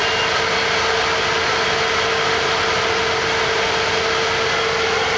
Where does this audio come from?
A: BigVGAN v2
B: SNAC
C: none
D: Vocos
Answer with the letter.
C